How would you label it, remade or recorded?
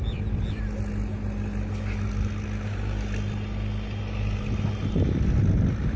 recorded